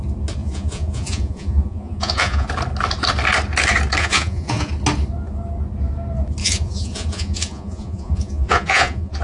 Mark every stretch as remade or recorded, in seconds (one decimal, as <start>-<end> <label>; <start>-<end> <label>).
0.0-0.4 recorded; 0.4-2.5 remade; 2.5-4.0 recorded; 4.0-4.7 remade; 4.7-6.4 recorded; 6.4-9.2 remade